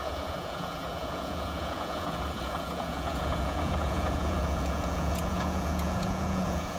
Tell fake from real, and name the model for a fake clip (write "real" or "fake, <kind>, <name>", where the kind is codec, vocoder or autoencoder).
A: fake, vocoder, Vocos